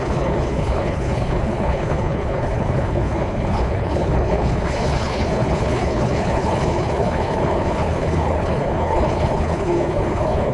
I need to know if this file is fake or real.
fake